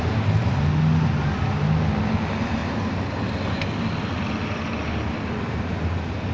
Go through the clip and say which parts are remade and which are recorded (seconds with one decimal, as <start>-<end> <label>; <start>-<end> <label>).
0.0-2.6 recorded; 2.6-3.2 remade; 3.2-6.3 recorded